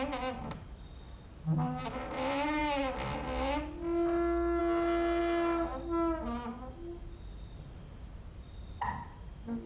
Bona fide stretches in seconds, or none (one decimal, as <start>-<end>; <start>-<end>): 0.0-9.7